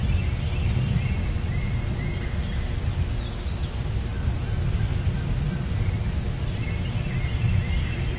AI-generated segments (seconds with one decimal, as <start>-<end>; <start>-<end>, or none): 4.9-6.7